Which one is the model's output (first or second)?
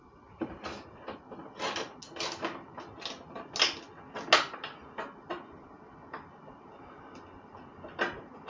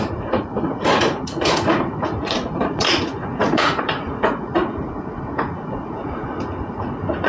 second